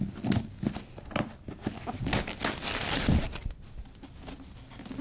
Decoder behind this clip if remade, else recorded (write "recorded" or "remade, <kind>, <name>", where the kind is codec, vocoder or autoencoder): recorded